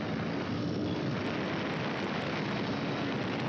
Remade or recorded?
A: recorded